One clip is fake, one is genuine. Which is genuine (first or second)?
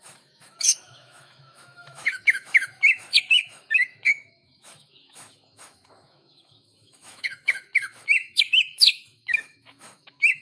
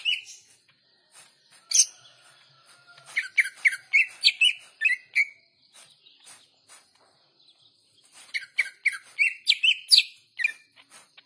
second